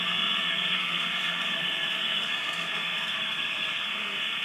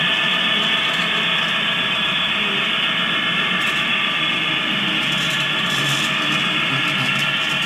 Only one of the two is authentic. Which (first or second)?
second